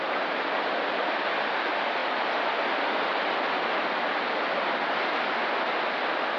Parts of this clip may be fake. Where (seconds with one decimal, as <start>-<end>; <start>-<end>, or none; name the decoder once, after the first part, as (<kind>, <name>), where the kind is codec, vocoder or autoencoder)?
none